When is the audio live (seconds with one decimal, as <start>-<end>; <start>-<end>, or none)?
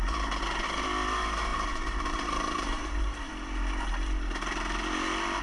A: 0.0-1.5; 3.3-5.4